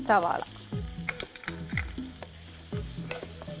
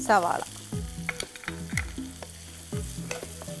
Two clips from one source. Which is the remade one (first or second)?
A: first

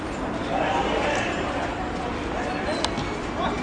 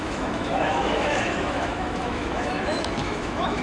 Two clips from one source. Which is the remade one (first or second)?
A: second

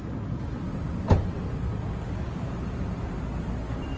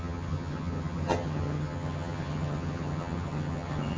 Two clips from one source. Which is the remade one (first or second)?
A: second